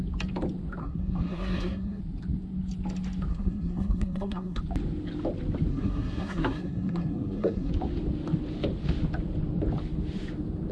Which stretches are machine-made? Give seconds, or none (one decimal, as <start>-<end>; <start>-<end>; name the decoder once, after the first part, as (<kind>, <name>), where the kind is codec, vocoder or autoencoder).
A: 0.8-2.0 (codec, SNAC); 3.3-4.6; 5.7-7.7